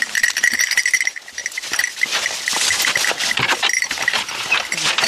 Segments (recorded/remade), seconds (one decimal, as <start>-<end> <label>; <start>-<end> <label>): 0.0-5.1 recorded